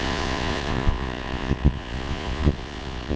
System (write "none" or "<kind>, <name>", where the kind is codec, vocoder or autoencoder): vocoder, Vocos